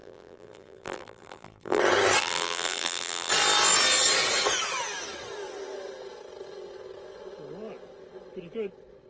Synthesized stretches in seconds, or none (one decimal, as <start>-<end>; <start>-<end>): 0.0-1.8; 2.2-3.3